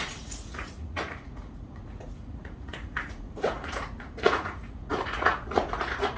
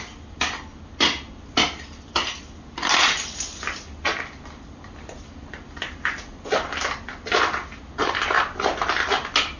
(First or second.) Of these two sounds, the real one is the second